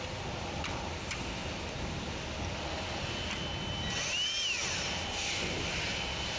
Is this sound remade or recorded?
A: recorded